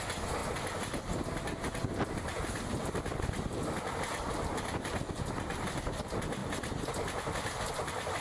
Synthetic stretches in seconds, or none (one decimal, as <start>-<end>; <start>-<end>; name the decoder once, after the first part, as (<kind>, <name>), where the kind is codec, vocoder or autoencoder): none